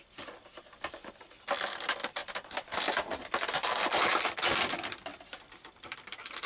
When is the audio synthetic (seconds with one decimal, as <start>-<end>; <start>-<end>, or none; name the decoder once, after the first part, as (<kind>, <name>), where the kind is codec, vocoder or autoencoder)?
2.2-4.1 (vocoder, BigVGAN v2); 5.1-6.5